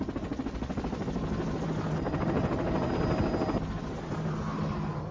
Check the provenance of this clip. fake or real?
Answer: real